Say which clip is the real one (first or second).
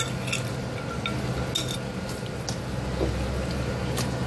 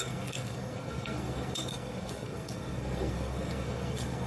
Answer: first